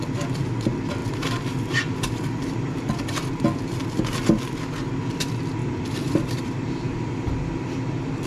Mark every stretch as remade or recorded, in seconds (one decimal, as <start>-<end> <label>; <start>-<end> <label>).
0.0-1.0 recorded; 1.0-2.9 remade; 2.9-5.6 recorded; 5.6-7.3 remade; 7.3-8.3 recorded